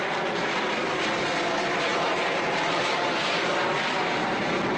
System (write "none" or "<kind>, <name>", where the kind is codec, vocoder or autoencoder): none